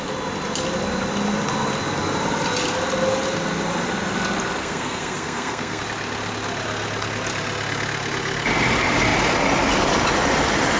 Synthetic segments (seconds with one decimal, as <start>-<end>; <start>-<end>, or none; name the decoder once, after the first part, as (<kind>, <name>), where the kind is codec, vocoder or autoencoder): 4.6-5.8 (codec, SNAC)

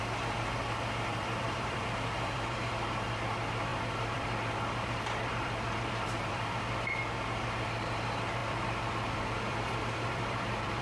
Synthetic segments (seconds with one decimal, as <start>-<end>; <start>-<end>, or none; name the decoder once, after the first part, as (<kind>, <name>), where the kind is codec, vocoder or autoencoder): 1.1-2.8 (vocoder, BigVGAN v2); 3.7-6.6; 8.4-10.8

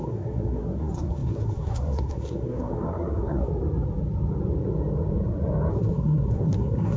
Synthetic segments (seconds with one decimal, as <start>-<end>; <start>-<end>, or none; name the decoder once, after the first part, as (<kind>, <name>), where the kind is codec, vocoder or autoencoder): 0.0-3.5 (codec, SNAC); 5.7-7.0